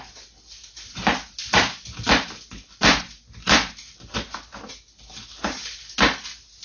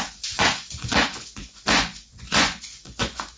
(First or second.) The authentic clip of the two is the first